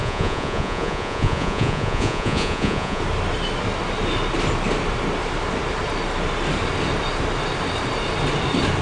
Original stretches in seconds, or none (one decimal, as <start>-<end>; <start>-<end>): 3.0-8.8